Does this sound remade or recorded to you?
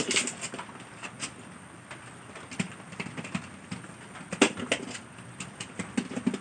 recorded